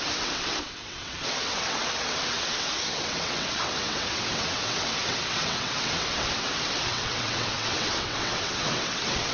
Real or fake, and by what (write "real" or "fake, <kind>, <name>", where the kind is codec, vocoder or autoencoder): fake, vocoder, WaveNeXt